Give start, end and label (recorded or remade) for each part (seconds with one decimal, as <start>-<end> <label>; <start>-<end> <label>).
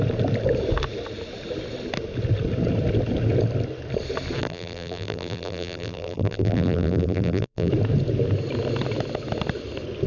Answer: 0.0-4.4 recorded; 4.4-7.7 remade; 7.7-10.1 recorded